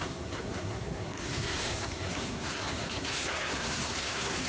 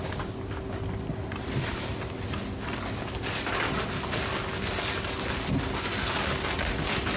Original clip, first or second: second